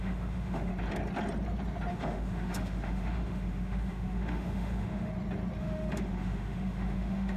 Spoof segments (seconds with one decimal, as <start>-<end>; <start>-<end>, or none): 0.0-0.7; 1.9-5.1; 5.6-7.4